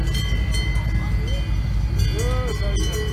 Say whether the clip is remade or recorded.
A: recorded